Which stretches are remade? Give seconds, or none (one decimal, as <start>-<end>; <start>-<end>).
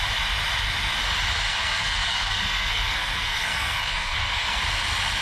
1.5-4.6